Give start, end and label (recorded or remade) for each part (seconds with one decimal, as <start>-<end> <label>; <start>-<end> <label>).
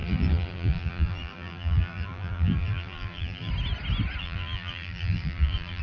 0.0-3.5 remade; 3.5-4.2 recorded; 4.2-5.8 remade